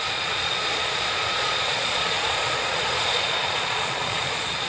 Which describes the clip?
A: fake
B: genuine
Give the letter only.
A